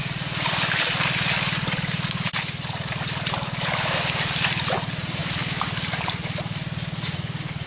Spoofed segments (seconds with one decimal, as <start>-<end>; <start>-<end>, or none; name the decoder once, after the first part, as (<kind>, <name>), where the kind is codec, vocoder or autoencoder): none